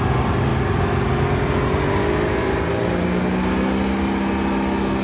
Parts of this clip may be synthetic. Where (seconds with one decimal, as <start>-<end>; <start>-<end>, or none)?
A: none